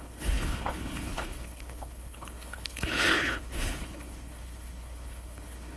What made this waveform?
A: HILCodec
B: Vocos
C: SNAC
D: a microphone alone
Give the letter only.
A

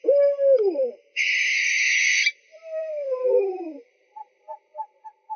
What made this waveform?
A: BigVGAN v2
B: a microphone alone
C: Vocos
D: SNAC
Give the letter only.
A